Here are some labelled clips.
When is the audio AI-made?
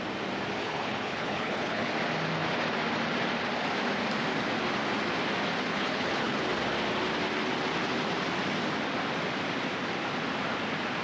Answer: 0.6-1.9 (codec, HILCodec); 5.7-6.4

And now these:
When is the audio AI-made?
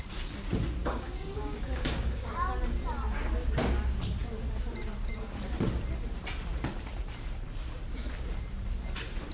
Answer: 0.8-2.3 (codec, DAC)